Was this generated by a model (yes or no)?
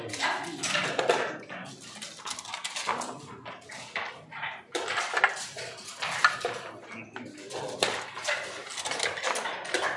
no